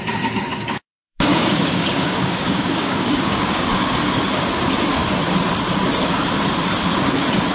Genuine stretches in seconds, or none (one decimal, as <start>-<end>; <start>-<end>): 0.0-0.5; 3.8-7.5